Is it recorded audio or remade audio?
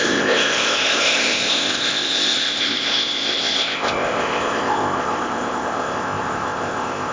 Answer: remade